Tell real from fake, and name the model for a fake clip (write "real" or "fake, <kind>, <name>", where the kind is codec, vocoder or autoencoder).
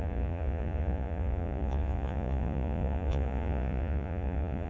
fake, vocoder, Vocos